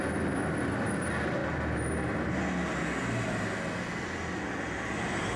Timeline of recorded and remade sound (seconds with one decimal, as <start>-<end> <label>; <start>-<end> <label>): 0.0-5.4 recorded